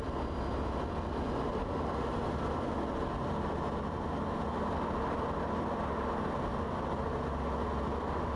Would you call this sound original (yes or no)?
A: yes